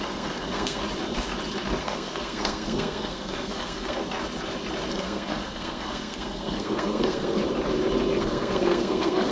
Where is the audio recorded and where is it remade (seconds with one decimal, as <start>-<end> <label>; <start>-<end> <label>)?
0.0-0.8 remade; 0.8-1.8 recorded; 1.8-4.0 remade; 4.0-4.9 recorded; 4.9-7.4 remade; 7.4-8.2 recorded; 8.2-9.3 remade